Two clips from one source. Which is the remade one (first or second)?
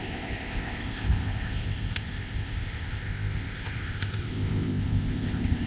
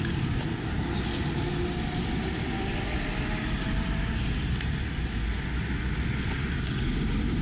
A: first